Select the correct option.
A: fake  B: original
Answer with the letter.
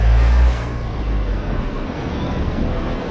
A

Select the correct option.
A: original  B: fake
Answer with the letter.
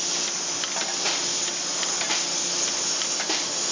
A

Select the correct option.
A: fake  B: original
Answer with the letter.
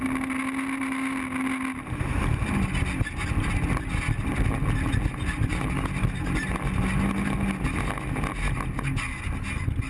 B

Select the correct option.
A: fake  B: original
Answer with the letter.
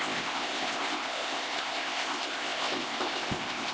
A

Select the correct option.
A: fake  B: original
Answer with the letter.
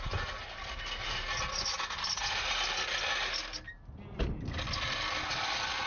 B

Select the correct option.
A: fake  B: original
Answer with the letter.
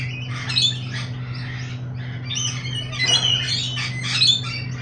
B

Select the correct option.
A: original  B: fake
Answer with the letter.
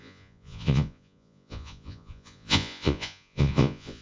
B